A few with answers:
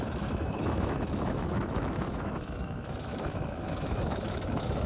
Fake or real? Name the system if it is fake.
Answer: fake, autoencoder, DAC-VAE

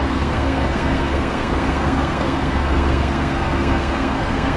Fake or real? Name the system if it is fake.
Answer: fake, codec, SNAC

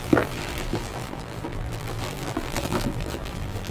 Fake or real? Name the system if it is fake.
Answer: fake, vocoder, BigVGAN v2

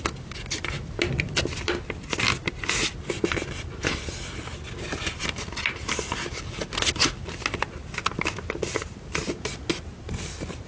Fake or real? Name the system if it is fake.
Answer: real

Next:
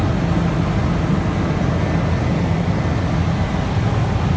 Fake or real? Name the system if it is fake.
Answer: real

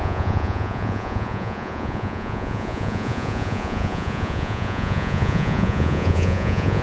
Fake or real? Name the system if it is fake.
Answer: fake, vocoder, Vocos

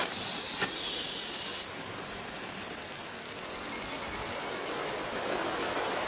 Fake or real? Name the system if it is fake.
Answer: real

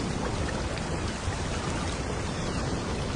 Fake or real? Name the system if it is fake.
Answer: real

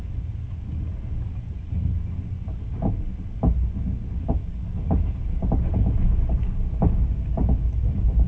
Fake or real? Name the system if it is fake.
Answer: real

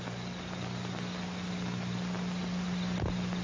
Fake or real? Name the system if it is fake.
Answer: real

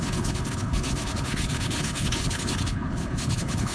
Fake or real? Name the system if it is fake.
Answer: fake, codec, HILCodec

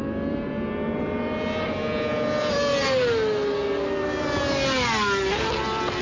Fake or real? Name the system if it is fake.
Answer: real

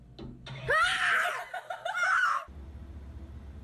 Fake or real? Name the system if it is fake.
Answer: real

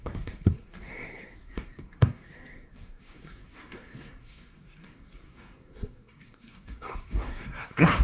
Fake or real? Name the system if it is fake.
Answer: fake, codec, SNAC